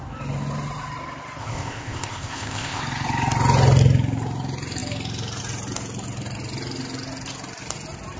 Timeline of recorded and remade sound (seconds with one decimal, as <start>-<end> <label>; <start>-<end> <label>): 0.0-1.4 recorded; 1.4-2.8 remade; 2.8-8.2 recorded